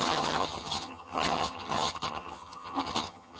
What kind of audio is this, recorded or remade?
remade